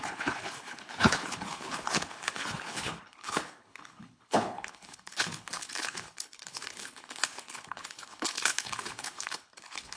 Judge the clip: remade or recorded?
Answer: remade